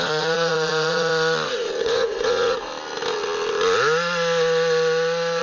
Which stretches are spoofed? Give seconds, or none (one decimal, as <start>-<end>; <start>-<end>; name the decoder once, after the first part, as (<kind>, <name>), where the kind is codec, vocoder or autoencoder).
0.0-1.1 (vocoder, Vocos); 1.8-2.7